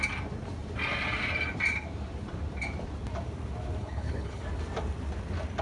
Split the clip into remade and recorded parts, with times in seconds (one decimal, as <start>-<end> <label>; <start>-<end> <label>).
0.0-3.8 recorded; 3.8-4.4 remade; 4.4-5.6 recorded